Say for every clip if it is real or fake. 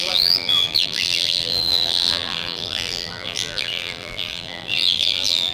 fake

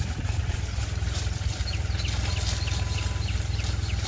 real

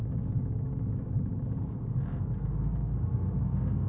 fake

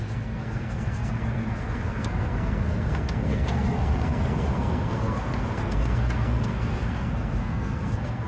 fake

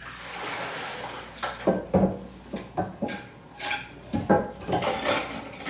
real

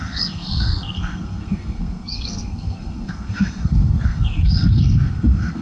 fake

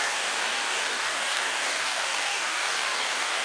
fake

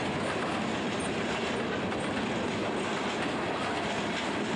real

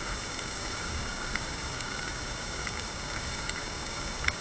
fake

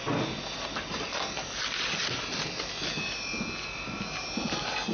real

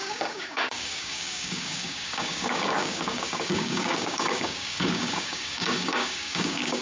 fake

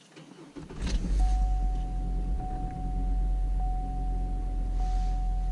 real